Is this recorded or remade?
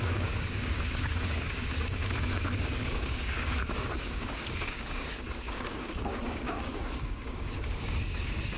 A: remade